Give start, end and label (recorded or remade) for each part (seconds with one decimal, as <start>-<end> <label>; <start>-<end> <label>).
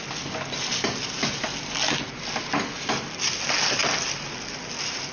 0.0-5.1 recorded